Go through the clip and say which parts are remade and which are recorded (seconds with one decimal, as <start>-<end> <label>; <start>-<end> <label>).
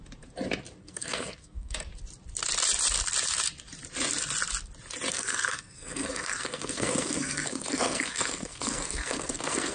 0.0-0.8 recorded; 0.8-1.9 remade; 1.9-5.1 recorded; 5.1-9.7 remade